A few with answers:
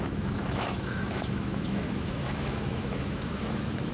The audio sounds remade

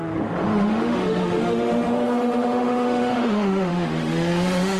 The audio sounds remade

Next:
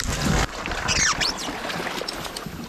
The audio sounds recorded